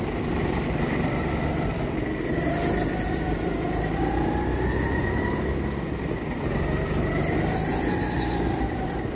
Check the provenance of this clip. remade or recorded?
remade